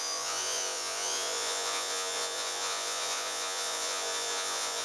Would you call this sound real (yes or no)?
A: no